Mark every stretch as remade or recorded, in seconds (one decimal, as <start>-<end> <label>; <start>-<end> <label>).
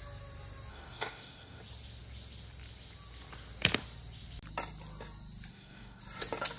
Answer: 0.0-0.7 recorded; 0.7-1.6 remade; 1.6-5.5 recorded; 5.5-6.0 remade; 6.0-6.6 recorded